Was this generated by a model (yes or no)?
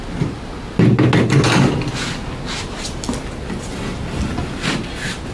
no